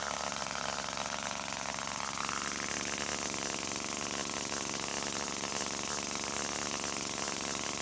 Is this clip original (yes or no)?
yes